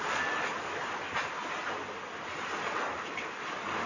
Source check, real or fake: real